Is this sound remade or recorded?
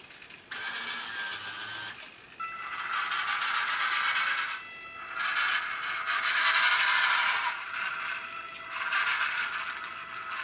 recorded